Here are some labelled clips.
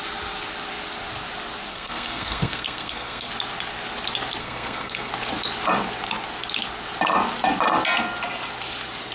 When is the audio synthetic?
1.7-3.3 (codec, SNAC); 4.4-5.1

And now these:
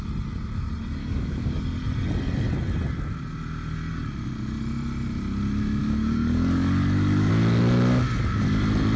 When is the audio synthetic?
1.0-1.6 (codec, DAC); 5.8-7.3

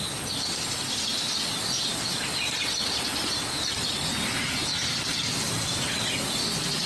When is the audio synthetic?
none

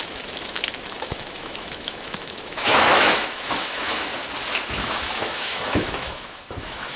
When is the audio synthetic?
0.0-4.1 (autoencoder, DAC-VAE); 4.7-7.0

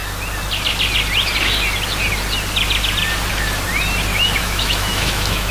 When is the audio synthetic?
4.1-5.5 (autoencoder, DAC-VAE)

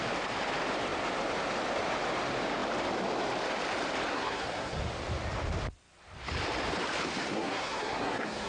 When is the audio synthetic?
4.1-4.8 (codec, SNAC); 7.2-8.5

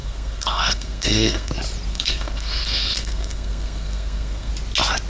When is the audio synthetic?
0.0-1.5 (codec, SNAC); 1.9-4.5